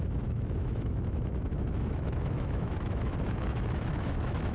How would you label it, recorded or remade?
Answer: remade